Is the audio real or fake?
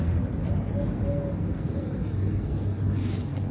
fake